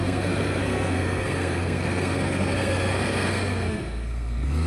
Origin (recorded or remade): remade